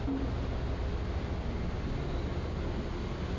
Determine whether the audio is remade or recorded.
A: recorded